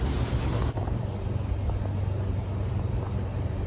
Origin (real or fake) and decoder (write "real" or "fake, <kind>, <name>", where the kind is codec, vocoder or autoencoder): real